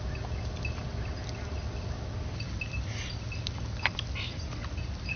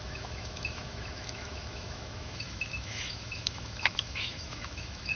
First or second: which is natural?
first